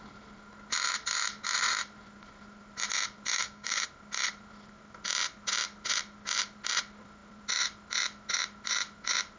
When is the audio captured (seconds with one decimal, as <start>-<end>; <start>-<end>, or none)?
0.0-3.4; 3.9-9.4